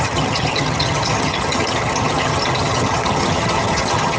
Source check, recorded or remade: remade